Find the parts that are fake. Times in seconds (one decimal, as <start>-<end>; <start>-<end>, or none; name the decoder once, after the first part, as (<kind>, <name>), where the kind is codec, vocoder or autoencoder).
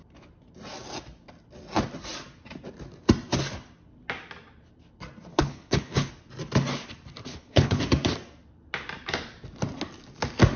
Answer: 5.3-6.1 (codec, HILCodec); 7.3-7.8